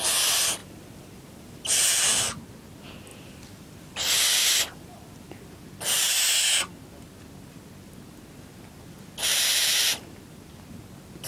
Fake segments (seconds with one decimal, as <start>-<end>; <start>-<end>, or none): 0.6-1.9; 3.1-5.5